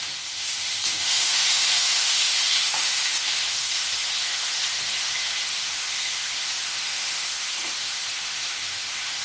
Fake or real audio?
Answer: fake